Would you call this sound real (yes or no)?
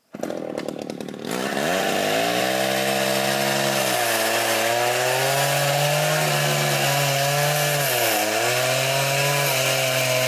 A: yes